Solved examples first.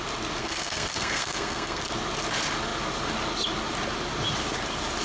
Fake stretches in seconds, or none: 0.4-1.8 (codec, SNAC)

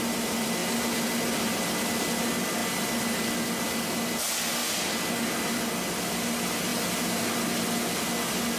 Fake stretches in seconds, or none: none

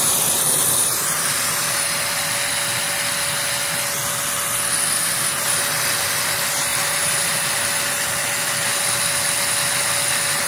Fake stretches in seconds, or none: 0.8-1.8 (vocoder, BigVGAN v2); 6.7-7.3

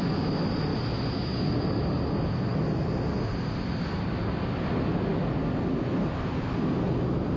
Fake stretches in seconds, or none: none

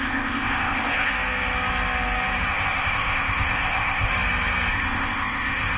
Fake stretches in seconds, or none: 0.0-1.1 (codec, ZipCodec); 2.5-4.1; 4.7-5.8

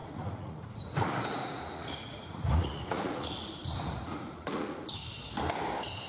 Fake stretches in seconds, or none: 0.0-5.0 (vocoder, Vocos)

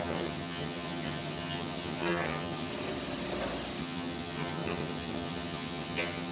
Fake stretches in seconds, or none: 0.0-2.7 (vocoder, HiFi-GAN); 3.8-6.3